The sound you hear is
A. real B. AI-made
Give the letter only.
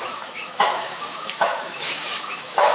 B